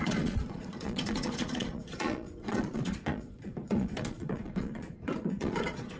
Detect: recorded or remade remade